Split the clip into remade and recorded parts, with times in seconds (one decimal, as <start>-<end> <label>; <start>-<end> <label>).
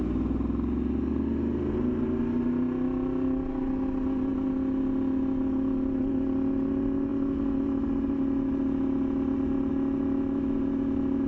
0.0-11.3 recorded